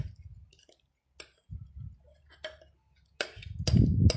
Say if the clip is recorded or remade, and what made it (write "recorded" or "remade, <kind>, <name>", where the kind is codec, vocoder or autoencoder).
recorded